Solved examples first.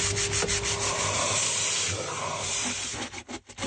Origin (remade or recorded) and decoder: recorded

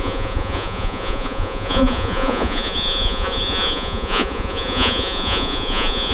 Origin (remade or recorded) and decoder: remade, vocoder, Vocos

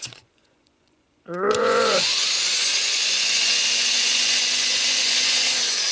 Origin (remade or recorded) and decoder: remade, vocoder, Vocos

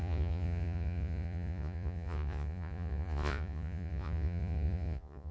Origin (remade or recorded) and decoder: remade, vocoder, Vocos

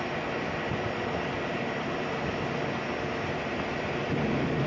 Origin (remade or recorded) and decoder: recorded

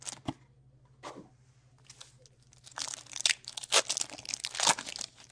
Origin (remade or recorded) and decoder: recorded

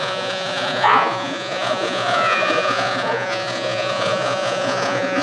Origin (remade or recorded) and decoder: remade, vocoder, Vocos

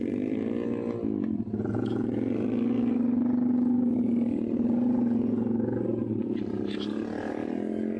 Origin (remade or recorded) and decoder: recorded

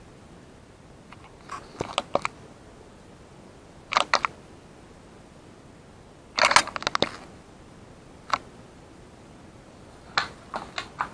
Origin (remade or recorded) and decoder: recorded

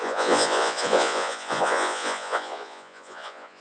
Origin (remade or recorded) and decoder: remade, vocoder, Vocos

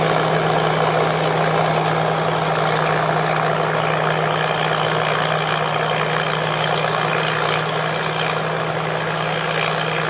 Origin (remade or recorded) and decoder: recorded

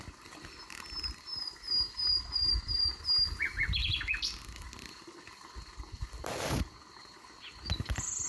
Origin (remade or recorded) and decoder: recorded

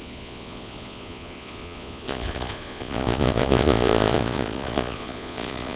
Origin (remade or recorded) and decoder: remade, vocoder, Vocos